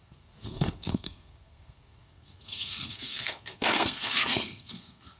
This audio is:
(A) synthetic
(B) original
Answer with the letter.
A